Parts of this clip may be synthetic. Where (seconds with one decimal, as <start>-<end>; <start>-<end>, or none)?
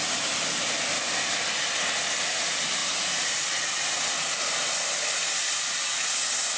none